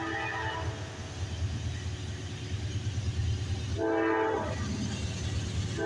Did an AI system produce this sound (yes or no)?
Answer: no